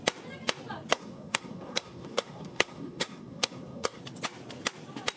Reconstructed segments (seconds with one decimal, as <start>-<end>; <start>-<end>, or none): 0.9-4.0